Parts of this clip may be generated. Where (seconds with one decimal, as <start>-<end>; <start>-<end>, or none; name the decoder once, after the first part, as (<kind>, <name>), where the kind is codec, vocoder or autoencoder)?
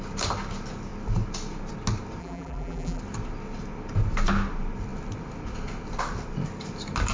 2.2-3.0 (vocoder, BigVGAN v2)